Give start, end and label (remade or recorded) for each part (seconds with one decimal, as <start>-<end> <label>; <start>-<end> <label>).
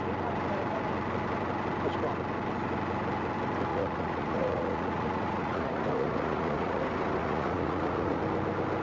0.0-3.7 recorded; 3.7-6.8 remade; 6.8-7.2 recorded; 7.2-8.2 remade; 8.2-8.8 recorded